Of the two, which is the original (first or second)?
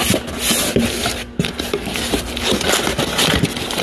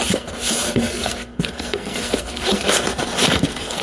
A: first